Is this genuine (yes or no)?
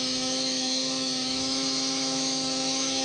no